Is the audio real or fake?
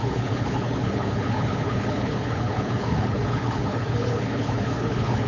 fake